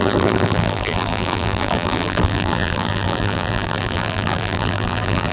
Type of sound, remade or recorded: remade